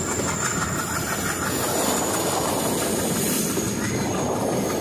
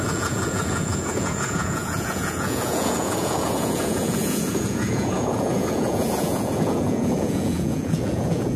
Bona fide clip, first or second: first